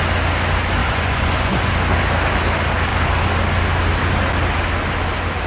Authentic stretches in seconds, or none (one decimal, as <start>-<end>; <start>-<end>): 0.0-0.8; 1.7-5.5